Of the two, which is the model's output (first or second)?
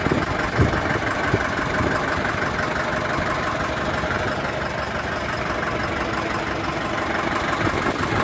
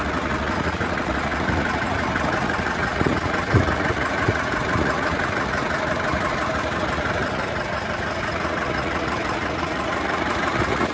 second